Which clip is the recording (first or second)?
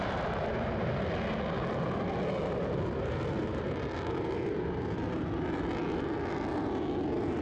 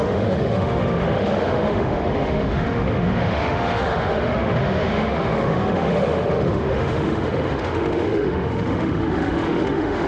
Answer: first